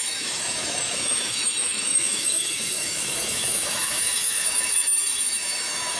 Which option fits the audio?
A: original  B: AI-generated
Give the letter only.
B